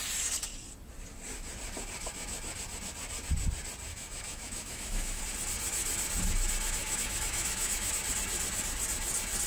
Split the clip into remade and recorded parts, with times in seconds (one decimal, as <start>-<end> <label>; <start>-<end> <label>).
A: 0.0-3.9 recorded; 3.9-5.2 remade; 5.2-6.8 recorded; 6.8-8.0 remade; 8.0-9.5 recorded